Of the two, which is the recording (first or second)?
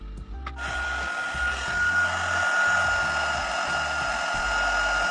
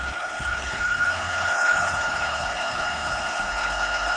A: first